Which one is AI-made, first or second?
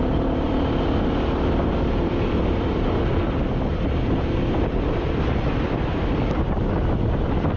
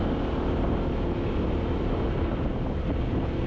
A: first